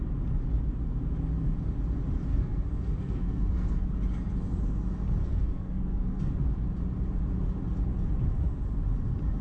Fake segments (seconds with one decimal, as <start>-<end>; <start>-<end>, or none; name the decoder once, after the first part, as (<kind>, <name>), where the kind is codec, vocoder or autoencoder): 2.3-3.9 (codec, SNAC); 5.2-6.2